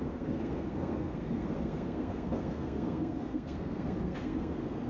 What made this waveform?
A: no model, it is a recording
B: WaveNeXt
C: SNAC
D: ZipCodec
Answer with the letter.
C